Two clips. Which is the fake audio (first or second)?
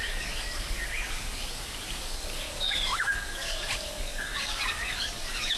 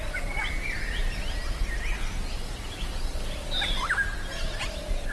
first